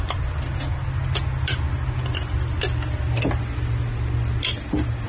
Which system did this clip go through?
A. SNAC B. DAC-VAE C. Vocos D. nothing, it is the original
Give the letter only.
D